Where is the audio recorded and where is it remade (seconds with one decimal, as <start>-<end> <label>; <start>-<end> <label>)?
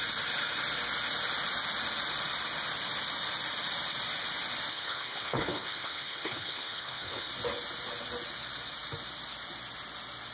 0.0-4.7 recorded; 4.7-7.3 remade; 7.3-10.3 recorded